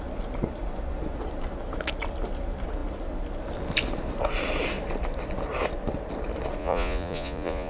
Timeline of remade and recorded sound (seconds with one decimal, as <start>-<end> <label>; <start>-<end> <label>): 0.0-6.6 recorded; 6.6-7.7 remade

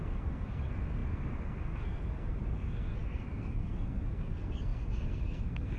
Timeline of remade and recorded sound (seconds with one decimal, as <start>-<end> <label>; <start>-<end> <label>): 0.0-5.8 remade

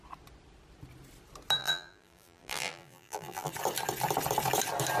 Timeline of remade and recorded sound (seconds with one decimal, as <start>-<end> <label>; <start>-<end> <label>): 0.0-1.6 recorded; 1.6-3.5 remade; 3.5-5.0 recorded

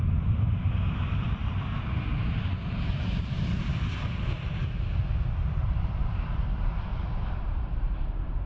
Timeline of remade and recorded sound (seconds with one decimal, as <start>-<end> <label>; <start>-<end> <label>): 0.0-6.9 remade; 6.9-7.4 recorded; 7.4-8.5 remade

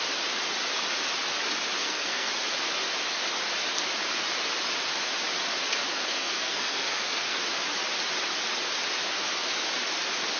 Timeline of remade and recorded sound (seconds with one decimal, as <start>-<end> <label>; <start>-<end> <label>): 0.0-1.8 recorded; 1.8-2.3 remade; 2.3-5.9 recorded; 5.9-7.4 remade; 7.4-10.4 recorded

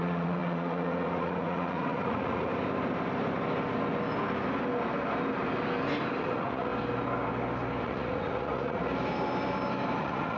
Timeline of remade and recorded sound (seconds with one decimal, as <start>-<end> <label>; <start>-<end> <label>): 0.0-2.5 remade; 2.5-6.2 recorded; 6.2-6.7 remade; 6.7-7.8 recorded; 7.8-8.8 remade; 8.8-10.0 recorded; 10.0-10.4 remade